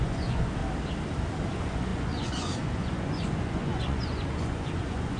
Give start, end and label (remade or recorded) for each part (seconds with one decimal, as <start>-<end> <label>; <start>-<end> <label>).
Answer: 0.0-0.6 remade; 0.6-1.5 recorded; 1.5-5.2 remade